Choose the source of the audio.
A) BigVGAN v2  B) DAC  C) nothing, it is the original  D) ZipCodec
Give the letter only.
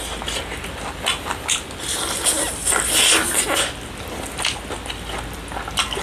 C